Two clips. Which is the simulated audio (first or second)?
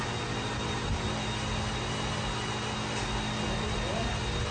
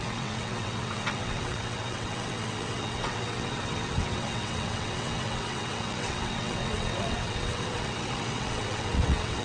second